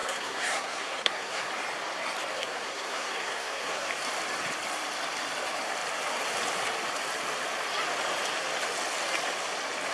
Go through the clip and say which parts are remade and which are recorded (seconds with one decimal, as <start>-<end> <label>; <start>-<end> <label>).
0.0-1.5 remade; 1.5-2.3 recorded; 2.3-3.9 remade; 3.9-9.9 recorded